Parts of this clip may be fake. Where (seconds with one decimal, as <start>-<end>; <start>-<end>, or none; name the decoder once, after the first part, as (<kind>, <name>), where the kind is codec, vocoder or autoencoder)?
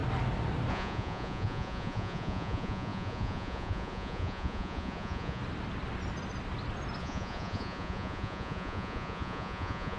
0.7-5.4 (vocoder, Vocos); 7.0-10.0